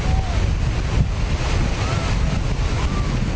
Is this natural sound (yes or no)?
yes